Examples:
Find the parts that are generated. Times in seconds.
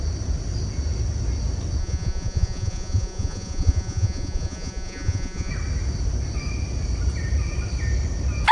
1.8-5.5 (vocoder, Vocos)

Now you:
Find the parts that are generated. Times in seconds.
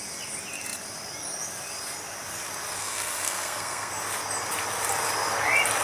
2.8-3.9 (codec, SNAC)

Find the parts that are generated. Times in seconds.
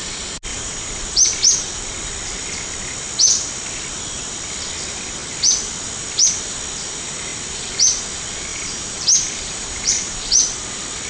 0.5-1.8 (vocoder, BigVGAN v2); 8.5-10.3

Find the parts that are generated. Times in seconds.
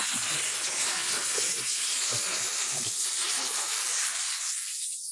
2.5-5.1 (vocoder, BigVGAN v2)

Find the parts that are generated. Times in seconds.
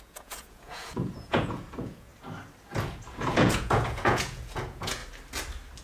0.0-2.1 (vocoder, Vocos); 3.2-5.0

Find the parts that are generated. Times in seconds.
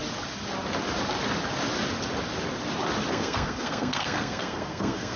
3.1-5.2 (codec, SNAC)